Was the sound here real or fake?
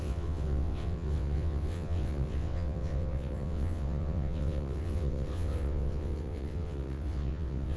fake